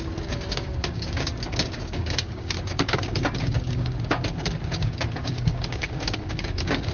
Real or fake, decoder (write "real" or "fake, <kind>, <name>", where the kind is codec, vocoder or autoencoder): fake, codec, DAC